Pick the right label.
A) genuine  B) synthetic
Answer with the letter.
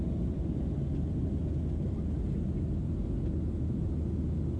A